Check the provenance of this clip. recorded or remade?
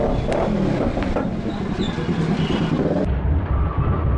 recorded